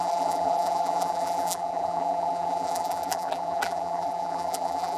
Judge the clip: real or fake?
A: fake